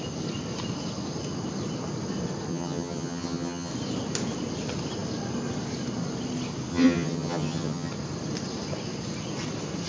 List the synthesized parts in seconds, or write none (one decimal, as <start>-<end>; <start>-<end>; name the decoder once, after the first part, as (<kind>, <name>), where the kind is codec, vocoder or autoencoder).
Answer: 2.5-3.7 (vocoder, HiFi-GAN); 6.7-7.9